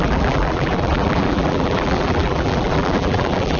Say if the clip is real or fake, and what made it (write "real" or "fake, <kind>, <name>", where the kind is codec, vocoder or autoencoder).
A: fake, vocoder, BigVGAN v2